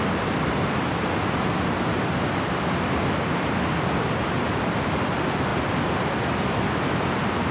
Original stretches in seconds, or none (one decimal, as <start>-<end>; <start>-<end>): 0.0-7.5